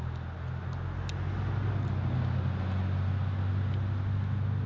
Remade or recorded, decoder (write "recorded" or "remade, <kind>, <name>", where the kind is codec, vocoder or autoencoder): recorded